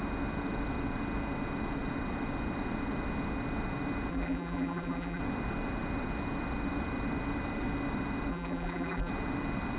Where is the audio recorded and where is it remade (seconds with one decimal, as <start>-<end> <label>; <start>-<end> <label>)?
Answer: 0.0-4.1 recorded; 4.1-5.2 remade; 5.2-8.3 recorded; 8.3-9.1 remade; 9.1-9.8 recorded